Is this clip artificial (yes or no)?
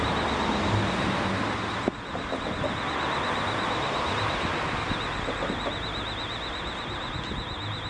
no